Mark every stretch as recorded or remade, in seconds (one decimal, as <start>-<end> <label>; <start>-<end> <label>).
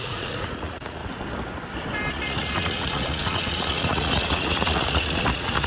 0.0-1.0 remade; 1.0-2.1 recorded; 2.1-5.7 remade